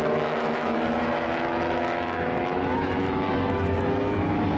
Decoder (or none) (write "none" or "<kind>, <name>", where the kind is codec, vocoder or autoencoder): autoencoder, DAC-VAE